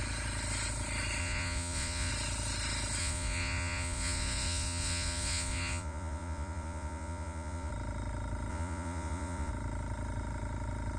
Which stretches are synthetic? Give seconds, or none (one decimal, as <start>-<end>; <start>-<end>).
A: 1.2-2.1; 3.0-7.7; 8.5-9.5